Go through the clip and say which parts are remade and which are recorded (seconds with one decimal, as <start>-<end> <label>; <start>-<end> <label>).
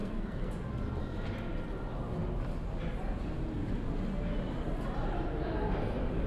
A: 0.0-0.5 remade; 0.5-6.3 recorded